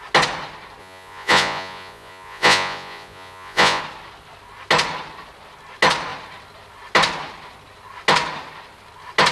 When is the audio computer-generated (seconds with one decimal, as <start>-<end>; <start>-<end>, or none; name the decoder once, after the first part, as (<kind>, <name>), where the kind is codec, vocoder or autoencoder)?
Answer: 0.8-3.8 (vocoder, Vocos)